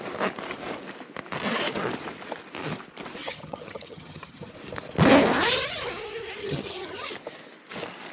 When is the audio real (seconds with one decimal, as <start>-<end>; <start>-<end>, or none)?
0.0-3.2; 4.5-6.4; 7.1-8.1